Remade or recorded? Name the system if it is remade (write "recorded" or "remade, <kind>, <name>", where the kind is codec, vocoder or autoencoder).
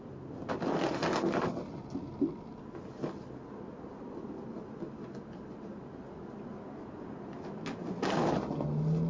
recorded